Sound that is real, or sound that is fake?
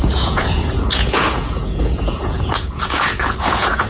fake